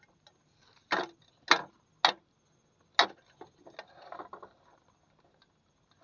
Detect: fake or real real